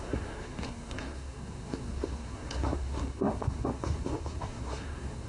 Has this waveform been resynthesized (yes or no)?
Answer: yes